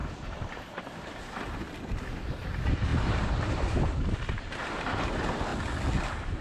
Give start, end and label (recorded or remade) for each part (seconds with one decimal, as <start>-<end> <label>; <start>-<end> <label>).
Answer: 0.0-1.4 remade; 1.4-2.9 recorded; 2.9-5.0 remade; 5.0-6.4 recorded